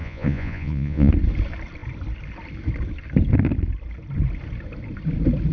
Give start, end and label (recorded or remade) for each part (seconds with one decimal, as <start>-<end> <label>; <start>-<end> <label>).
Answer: 0.0-1.1 remade; 1.1-5.5 recorded